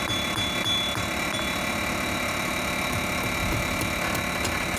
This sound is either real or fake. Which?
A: real